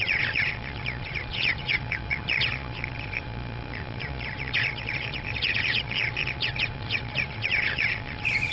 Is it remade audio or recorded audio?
remade